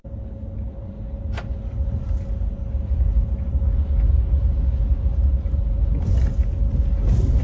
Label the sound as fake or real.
real